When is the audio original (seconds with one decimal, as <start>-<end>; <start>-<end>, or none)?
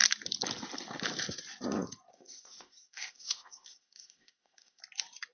0.0-2.1; 4.8-5.3